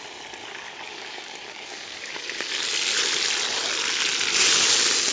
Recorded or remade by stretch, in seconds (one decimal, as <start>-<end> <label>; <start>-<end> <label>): 0.0-0.4 recorded; 0.4-2.5 remade; 2.5-5.1 recorded